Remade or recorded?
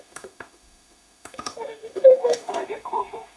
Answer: remade